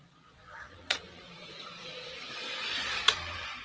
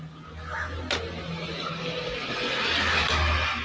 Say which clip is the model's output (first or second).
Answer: first